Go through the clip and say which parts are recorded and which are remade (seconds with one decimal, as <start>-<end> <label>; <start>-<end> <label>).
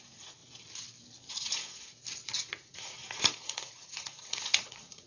0.0-0.4 remade; 0.4-1.3 recorded; 1.3-1.9 remade; 1.9-2.6 recorded; 2.6-5.1 remade